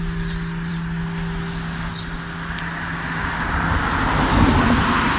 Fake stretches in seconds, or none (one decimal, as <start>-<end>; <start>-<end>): none